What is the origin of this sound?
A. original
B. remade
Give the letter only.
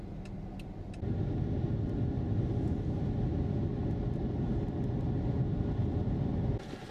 A